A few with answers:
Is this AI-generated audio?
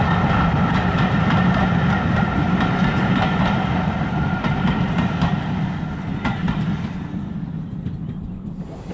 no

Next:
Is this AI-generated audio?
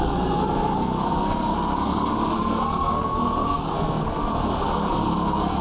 yes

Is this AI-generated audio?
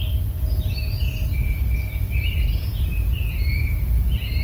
no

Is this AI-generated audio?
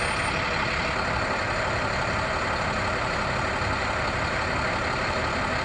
no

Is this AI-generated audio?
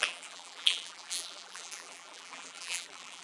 yes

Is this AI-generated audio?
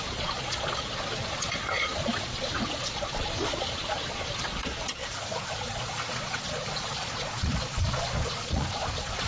yes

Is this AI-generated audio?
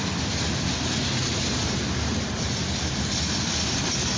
no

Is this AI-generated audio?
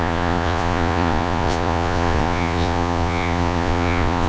yes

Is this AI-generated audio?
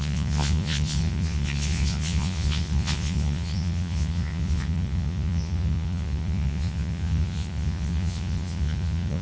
yes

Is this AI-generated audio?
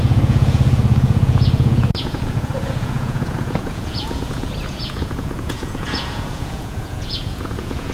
yes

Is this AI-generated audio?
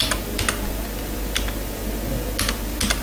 no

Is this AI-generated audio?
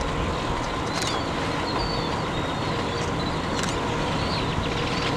no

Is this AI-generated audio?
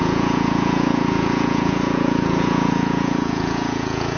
yes